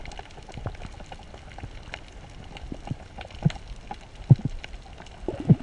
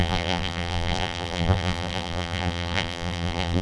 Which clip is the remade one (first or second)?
second